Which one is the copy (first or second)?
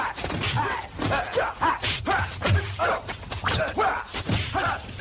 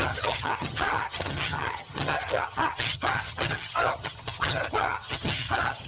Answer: second